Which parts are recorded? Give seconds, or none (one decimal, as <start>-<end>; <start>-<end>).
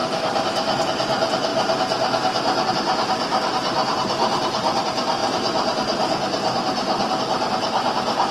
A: 0.8-3.3; 4.8-5.2; 7.2-8.3